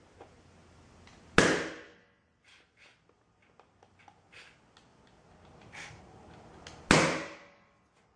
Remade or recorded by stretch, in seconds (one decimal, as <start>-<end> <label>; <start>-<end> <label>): 0.0-8.2 recorded